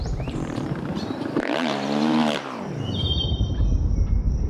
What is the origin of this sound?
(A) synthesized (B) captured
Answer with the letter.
A